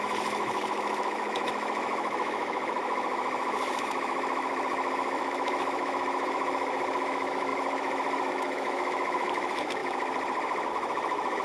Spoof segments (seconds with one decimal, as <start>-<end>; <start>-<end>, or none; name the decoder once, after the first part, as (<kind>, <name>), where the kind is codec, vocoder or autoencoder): 0.0-9.8 (autoencoder, DAC-VAE); 10.7-11.4